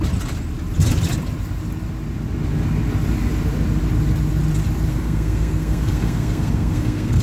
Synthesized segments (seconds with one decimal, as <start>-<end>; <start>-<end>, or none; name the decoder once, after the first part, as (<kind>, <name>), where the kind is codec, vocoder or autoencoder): 4.9-7.2 (codec, SNAC)